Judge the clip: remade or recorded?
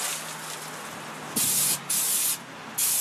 recorded